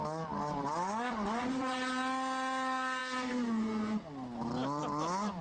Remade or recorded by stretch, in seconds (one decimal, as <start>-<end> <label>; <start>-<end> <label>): 0.0-5.4 recorded